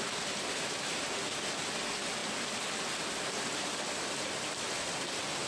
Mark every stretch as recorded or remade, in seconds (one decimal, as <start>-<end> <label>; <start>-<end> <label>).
0.0-5.5 recorded